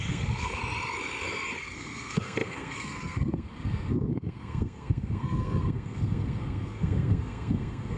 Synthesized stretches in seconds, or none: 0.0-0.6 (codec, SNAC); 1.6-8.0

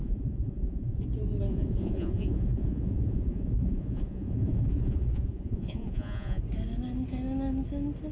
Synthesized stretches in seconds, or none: 0.0-1.0 (vocoder, Vocos); 1.5-6.4